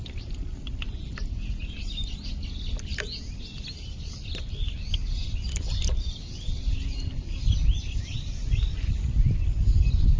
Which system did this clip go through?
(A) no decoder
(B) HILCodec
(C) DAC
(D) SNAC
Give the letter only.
A